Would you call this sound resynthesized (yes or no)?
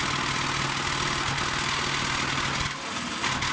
no